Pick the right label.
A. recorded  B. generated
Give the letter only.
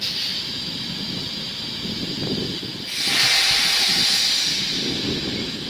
A